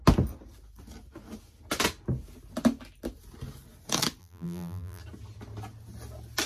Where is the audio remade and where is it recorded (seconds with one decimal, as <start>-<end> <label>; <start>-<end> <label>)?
0.0-4.2 recorded; 4.2-5.0 remade; 5.0-6.5 recorded